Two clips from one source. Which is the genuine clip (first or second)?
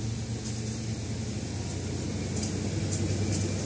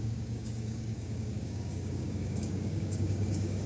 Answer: first